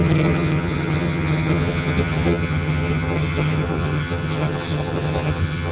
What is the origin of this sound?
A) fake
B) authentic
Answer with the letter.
A